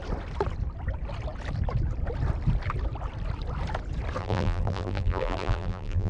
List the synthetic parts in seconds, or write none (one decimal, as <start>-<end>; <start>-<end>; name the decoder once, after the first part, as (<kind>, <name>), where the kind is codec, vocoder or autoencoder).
4.2-6.1 (vocoder, BigVGAN v2)

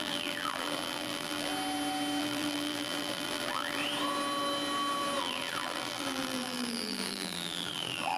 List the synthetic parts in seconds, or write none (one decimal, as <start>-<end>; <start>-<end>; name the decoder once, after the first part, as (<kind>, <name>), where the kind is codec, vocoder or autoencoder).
0.0-1.5 (vocoder, BigVGAN v2); 2.2-3.8; 5.2-8.2

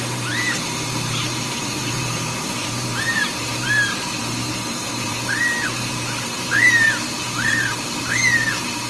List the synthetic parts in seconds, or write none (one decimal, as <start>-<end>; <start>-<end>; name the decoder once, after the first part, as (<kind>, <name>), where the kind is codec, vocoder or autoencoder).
0.0-8.9 (vocoder, BigVGAN v2)

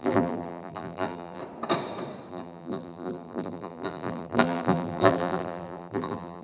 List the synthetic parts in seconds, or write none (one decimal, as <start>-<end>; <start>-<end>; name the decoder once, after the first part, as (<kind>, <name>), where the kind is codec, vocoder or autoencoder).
0.0-1.4 (vocoder, BigVGAN v2); 2.3-6.4